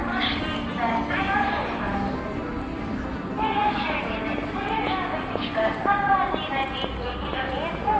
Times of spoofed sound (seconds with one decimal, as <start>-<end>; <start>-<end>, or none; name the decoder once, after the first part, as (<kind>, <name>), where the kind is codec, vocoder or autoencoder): 3.6-4.8 (vocoder, BigVGAN v2)